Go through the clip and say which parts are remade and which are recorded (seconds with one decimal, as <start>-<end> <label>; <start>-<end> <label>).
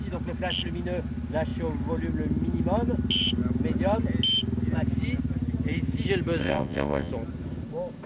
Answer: 0.0-6.4 recorded; 6.4-7.1 remade; 7.1-8.1 recorded